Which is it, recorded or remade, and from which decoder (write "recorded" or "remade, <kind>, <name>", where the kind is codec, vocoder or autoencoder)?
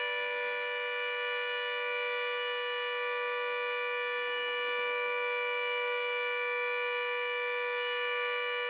recorded